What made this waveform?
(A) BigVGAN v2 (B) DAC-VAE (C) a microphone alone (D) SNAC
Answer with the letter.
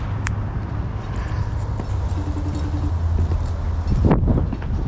C